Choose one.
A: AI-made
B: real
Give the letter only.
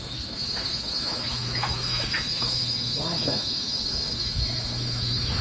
A